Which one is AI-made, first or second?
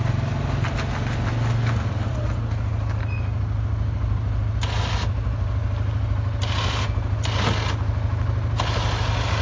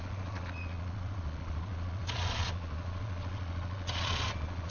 second